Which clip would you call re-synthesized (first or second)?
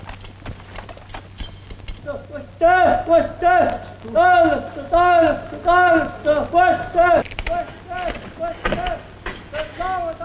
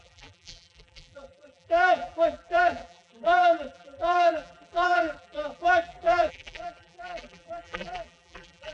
second